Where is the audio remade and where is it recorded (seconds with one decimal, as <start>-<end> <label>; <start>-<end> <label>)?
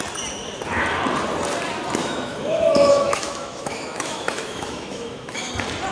0.0-2.0 recorded; 2.0-5.5 remade; 5.5-5.9 recorded